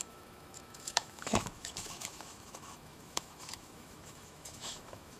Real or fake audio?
fake